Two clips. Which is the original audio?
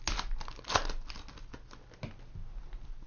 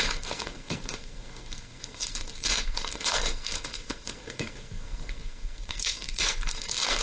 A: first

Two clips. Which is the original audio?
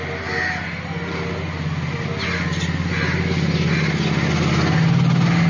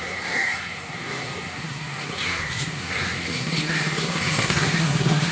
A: first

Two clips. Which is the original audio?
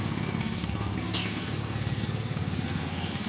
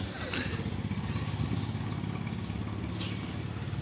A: second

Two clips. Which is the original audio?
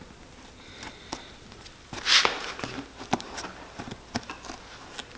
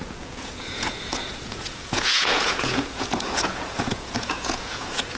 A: first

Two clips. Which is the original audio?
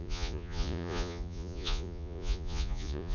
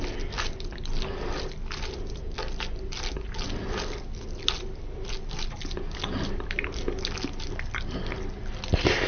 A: second